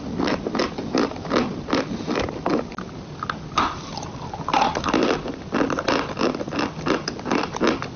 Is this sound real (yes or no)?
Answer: yes